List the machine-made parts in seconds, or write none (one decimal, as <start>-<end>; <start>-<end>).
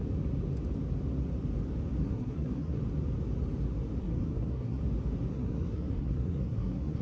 2.0-2.8; 4.0-4.8; 5.3-7.0